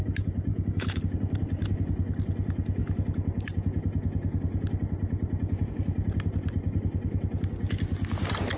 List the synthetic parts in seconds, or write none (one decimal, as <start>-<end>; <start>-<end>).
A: 0.5-1.0